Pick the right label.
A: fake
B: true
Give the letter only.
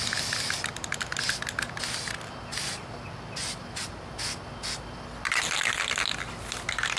B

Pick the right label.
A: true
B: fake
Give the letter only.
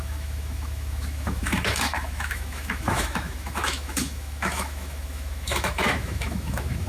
B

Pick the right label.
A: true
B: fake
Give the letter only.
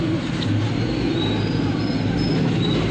A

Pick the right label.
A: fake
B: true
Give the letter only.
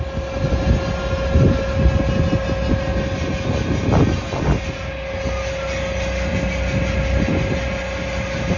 B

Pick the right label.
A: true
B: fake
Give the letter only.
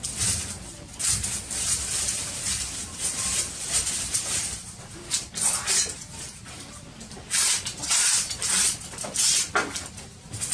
A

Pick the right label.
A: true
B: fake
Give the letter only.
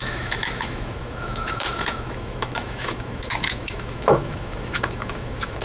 B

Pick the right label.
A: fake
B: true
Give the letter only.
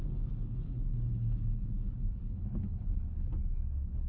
A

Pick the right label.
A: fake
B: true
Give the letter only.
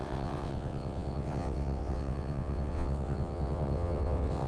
A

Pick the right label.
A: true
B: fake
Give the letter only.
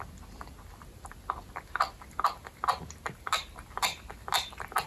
A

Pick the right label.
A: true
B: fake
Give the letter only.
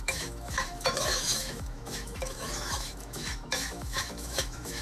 B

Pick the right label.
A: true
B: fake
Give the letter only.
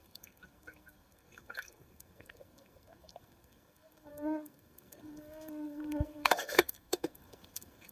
B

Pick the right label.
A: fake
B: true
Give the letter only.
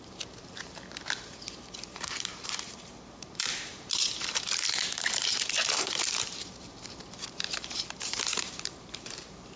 A